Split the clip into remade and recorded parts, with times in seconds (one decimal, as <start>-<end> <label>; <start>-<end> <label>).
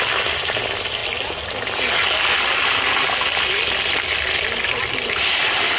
0.0-5.8 recorded